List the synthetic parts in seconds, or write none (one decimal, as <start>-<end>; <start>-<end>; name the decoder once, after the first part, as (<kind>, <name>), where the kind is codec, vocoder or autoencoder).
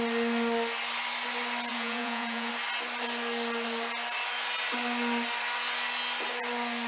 1.7-2.5 (vocoder, Vocos)